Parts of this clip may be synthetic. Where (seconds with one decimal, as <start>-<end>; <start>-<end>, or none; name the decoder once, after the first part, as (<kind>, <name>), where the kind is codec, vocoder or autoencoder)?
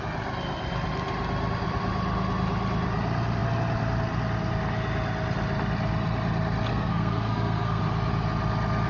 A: 6.7-7.8 (codec, SNAC)